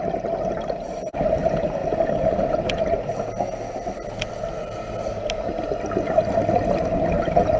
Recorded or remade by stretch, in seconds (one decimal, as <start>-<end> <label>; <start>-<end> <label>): 0.0-7.6 recorded